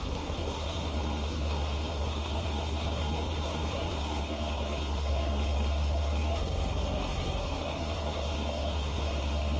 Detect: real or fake fake